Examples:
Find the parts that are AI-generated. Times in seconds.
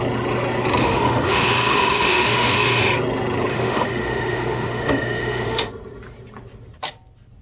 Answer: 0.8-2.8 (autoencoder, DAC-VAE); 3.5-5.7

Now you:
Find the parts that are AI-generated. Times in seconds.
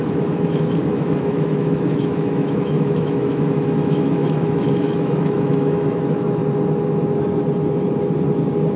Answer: 0.0-6.4 (autoencoder, DAC-VAE)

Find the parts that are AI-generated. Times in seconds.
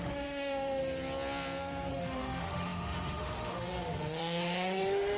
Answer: 0.0-0.8 (autoencoder, DAC-VAE); 1.9-5.2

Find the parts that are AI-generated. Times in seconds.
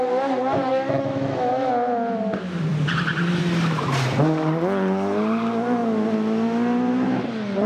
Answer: 0.7-1.7 (autoencoder, DAC-VAE)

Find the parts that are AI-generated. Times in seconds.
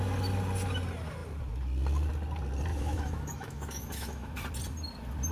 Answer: 2.7-4.4 (autoencoder, DAC-VAE)